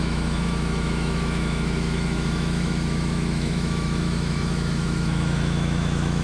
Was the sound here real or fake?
fake